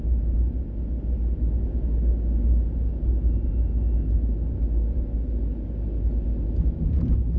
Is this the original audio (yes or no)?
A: yes